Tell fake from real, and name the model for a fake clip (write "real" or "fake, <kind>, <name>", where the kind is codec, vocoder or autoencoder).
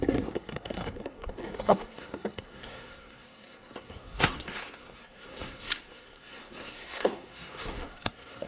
fake, codec, SNAC